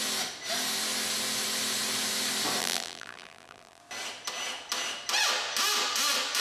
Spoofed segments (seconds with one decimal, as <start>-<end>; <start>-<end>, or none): 2.6-3.8